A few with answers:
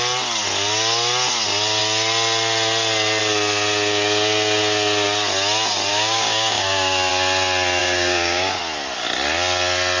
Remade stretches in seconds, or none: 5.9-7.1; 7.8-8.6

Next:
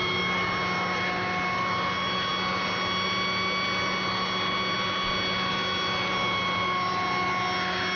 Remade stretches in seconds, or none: none

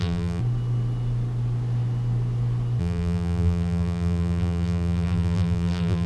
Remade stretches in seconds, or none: 0.0-0.4; 2.8-6.1

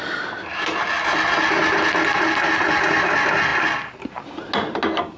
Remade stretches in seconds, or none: none

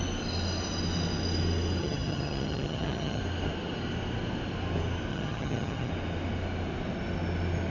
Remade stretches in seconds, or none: 1.8-3.2; 5.1-5.9